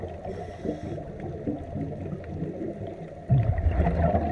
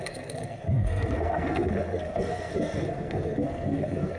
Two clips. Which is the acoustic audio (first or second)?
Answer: first